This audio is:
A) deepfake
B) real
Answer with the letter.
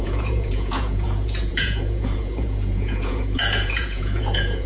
A